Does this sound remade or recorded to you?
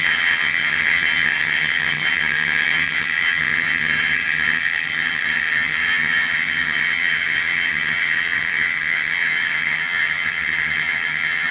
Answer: remade